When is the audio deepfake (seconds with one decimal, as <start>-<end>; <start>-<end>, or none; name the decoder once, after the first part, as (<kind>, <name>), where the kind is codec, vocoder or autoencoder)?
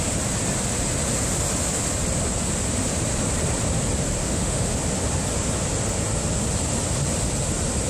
4.2-4.8 (autoencoder, DAC-VAE)